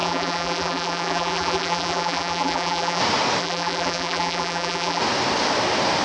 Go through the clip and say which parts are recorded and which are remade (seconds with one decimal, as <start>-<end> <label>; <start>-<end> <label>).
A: 0.0-3.0 remade; 3.0-3.4 recorded; 3.4-5.0 remade; 5.0-6.0 recorded